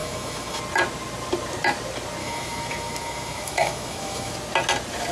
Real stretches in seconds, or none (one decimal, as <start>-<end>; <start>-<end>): 0.6-2.2; 4.3-5.1